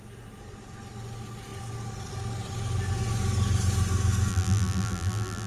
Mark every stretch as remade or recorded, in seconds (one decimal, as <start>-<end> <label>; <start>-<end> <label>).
0.0-4.3 recorded; 4.3-5.5 remade